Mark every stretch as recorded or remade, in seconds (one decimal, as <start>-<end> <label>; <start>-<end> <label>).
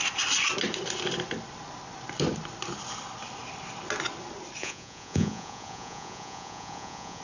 0.0-4.6 recorded; 4.6-7.2 remade